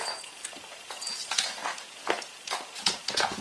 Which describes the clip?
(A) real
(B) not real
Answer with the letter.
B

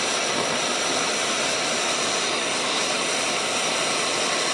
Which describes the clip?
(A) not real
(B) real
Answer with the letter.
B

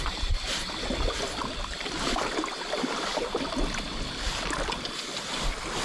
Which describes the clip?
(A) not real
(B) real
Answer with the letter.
B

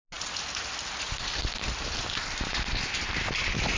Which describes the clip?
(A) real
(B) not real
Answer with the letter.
A